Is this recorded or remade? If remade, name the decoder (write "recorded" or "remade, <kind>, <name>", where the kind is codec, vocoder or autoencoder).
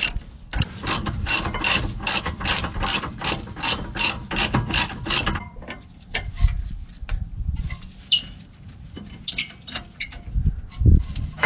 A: remade, vocoder, BigVGAN v2